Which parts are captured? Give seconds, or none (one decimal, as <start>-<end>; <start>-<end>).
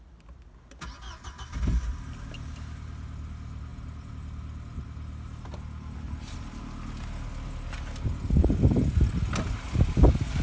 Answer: 0.0-10.4